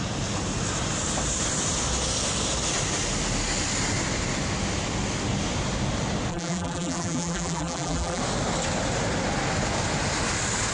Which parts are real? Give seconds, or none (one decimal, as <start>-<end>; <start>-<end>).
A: 0.0-6.3; 8.2-10.7